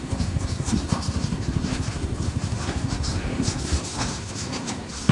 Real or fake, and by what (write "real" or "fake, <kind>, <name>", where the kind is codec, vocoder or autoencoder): fake, codec, SNAC